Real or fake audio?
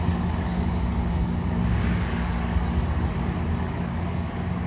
fake